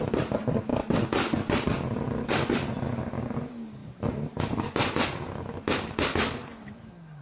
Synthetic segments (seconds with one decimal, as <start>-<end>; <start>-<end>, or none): none